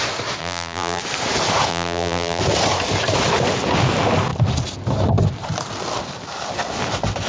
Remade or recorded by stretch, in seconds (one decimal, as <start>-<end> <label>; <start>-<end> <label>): 0.0-0.4 recorded; 0.4-1.0 remade; 1.0-1.7 recorded; 1.7-2.4 remade; 2.4-7.3 recorded